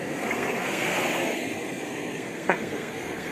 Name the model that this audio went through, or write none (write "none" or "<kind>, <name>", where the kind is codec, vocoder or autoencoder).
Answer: codec, SNAC